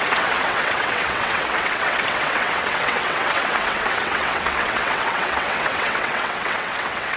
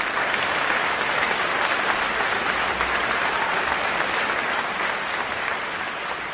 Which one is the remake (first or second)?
first